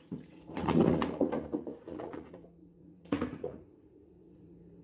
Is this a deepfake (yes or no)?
yes